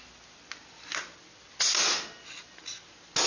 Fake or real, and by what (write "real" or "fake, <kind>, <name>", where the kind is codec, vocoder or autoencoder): real